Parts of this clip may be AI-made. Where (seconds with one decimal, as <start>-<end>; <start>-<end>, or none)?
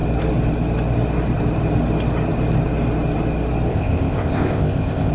3.7-5.1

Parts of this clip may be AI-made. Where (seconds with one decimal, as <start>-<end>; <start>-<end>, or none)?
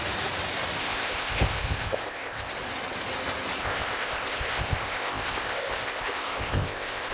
0.8-2.5; 3.6-7.1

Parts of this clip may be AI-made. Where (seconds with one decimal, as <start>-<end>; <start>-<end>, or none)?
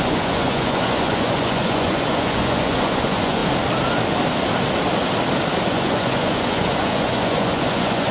0.0-3.4; 5.7-8.1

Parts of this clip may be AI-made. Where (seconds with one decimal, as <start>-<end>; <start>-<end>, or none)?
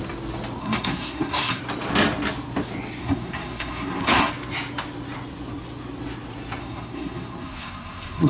0.6-1.6; 3.0-4.3; 6.6-8.3